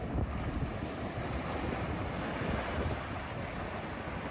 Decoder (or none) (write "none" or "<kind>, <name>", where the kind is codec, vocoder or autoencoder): none